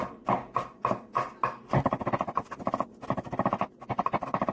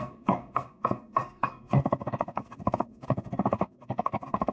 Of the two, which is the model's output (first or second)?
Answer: second